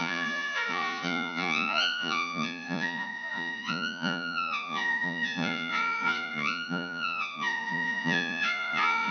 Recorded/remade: remade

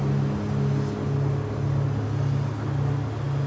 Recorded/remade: recorded